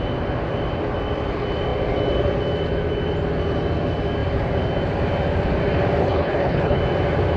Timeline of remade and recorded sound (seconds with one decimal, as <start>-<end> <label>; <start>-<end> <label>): 0.0-6.0 recorded; 6.0-6.8 remade; 6.8-7.4 recorded